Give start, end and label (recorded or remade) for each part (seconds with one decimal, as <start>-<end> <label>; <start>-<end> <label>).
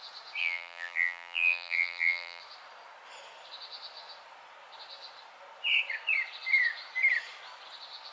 0.0-0.4 recorded; 0.4-2.4 remade; 2.4-8.1 recorded